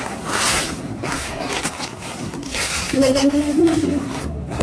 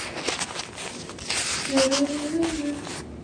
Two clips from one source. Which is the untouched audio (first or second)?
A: second